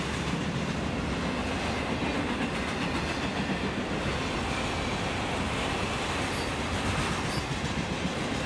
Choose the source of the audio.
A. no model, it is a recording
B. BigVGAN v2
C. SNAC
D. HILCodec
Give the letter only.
A